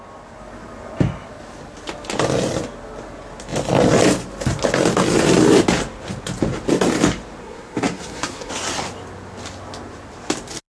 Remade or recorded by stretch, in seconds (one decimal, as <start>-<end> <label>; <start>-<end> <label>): 0.0-7.4 recorded; 7.4-8.5 remade; 8.5-10.7 recorded